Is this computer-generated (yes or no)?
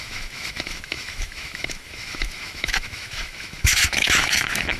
yes